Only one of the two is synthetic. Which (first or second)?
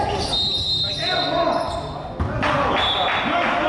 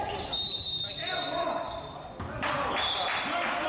second